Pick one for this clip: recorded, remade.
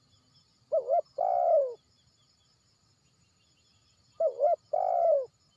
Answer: recorded